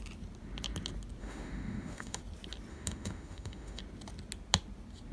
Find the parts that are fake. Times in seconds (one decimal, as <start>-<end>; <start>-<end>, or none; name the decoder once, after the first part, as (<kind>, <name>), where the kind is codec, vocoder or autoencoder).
1.2-2.2 (autoencoder, DAC-VAE); 2.7-3.8